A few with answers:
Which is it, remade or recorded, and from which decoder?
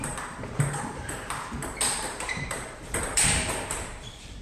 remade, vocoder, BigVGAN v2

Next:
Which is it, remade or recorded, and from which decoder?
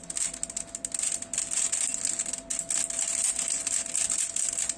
recorded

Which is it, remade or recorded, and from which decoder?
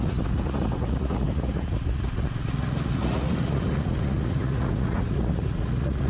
remade, vocoder, Vocos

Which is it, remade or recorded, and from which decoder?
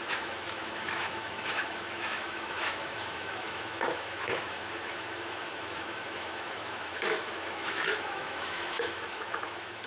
remade, autoencoder, DAC-VAE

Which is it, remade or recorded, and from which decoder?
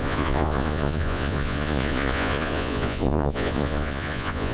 remade, vocoder, Vocos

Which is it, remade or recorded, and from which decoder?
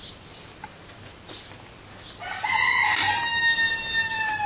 recorded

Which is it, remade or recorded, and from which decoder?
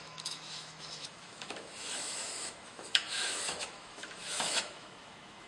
remade, autoencoder, DAC-VAE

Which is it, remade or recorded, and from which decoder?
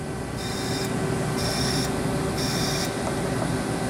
recorded